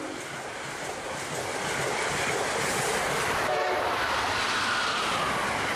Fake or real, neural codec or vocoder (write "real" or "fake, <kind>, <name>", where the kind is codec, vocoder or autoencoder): real